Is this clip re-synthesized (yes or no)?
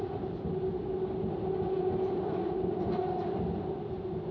no